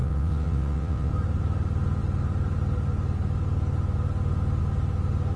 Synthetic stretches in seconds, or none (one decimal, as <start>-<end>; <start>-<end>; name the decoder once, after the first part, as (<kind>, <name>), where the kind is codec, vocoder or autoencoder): 0.0-1.1 (vocoder, WaveNeXt)